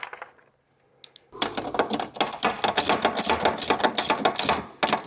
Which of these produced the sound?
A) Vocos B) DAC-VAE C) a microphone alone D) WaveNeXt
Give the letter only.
C